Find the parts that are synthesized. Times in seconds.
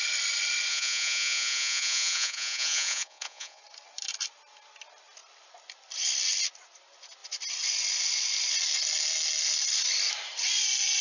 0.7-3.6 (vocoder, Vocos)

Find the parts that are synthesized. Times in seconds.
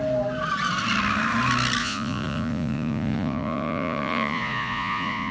1.8-5.3 (vocoder, Vocos)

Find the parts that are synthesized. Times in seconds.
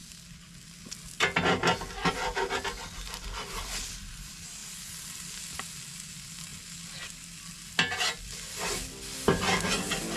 none